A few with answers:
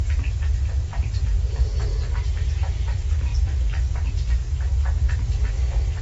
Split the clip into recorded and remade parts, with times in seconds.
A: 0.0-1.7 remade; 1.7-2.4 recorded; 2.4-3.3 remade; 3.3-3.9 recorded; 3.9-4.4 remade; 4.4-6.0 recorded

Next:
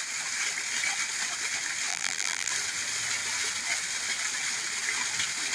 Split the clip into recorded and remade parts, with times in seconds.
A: 0.0-1.9 recorded; 1.9-2.5 remade; 2.5-5.5 recorded

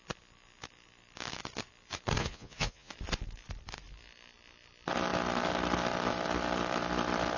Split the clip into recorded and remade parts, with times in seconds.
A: 0.0-2.2 recorded; 2.2-2.9 remade; 2.9-7.4 recorded

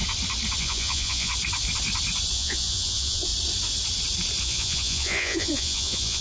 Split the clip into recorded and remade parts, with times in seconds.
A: 0.0-0.6 recorded; 0.6-1.3 remade; 1.3-2.3 recorded; 2.3-3.3 remade; 3.3-4.4 recorded; 4.4-6.2 remade

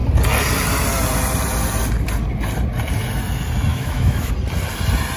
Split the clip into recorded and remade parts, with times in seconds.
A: 0.0-3.7 recorded; 3.7-4.3 remade; 4.3-5.2 recorded

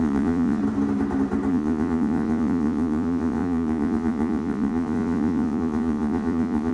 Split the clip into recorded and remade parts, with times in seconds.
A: 0.0-0.6 remade; 0.6-1.5 recorded; 1.5-6.7 remade

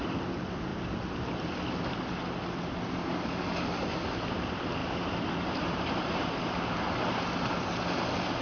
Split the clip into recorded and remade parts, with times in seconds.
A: 0.0-4.8 recorded; 4.8-7.2 remade; 7.2-8.4 recorded

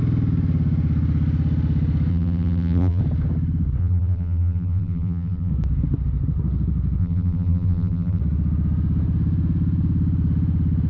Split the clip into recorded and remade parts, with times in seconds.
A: 0.0-2.1 recorded; 2.1-3.0 remade; 3.0-3.8 recorded; 3.8-5.5 remade; 5.5-7.0 recorded; 7.0-8.2 remade; 8.2-10.9 recorded